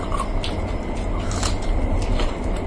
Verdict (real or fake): real